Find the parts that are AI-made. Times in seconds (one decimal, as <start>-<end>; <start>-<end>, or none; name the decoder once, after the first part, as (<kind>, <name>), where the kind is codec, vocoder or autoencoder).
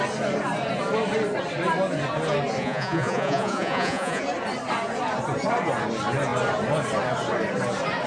2.6-4.2 (vocoder, Vocos)